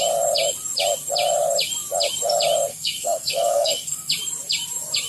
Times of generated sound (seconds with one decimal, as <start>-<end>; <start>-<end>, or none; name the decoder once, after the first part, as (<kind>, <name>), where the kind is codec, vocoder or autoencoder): 2.7-4.1 (codec, SNAC)